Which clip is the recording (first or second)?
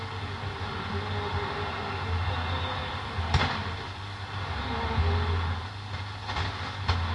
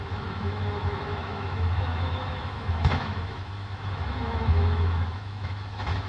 first